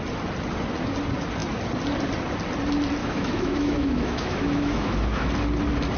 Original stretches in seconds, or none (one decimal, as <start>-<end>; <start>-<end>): 0.0-3.0; 5.3-6.0